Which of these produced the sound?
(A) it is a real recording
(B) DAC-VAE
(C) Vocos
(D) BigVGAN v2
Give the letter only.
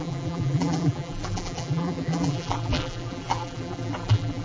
D